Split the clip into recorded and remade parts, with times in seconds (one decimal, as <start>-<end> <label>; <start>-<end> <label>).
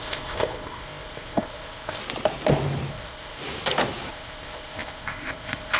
0.0-2.0 remade; 2.0-2.9 recorded; 2.9-3.4 remade; 3.4-4.1 recorded; 4.1-5.8 remade